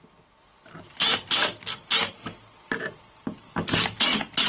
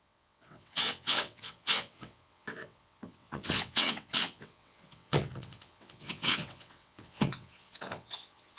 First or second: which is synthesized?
second